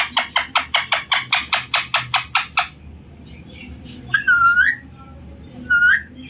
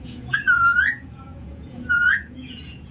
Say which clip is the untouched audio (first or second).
first